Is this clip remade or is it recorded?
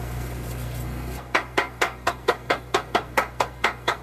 remade